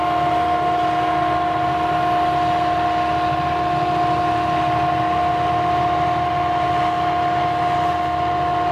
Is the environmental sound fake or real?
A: real